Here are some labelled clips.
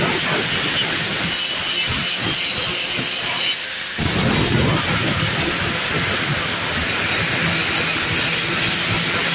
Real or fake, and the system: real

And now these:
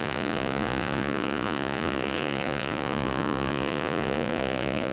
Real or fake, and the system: fake, vocoder, Vocos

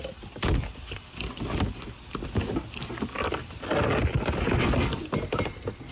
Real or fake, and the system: real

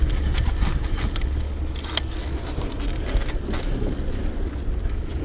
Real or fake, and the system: real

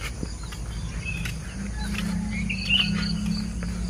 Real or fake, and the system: real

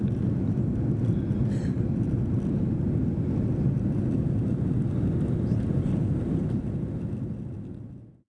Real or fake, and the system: real